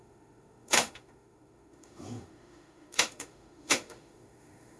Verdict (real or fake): fake